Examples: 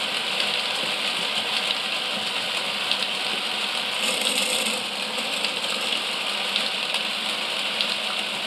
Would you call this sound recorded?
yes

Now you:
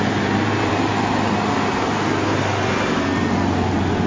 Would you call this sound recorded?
yes